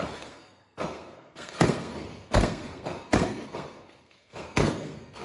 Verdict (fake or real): fake